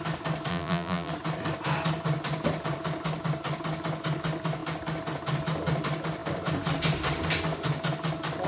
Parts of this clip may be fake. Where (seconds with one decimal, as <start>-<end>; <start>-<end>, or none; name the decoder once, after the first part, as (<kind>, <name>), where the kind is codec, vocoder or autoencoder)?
0.5-1.1 (vocoder, BigVGAN v2)